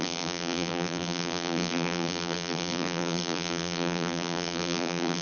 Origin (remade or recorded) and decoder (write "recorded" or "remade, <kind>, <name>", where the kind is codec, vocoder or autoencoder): remade, vocoder, BigVGAN v2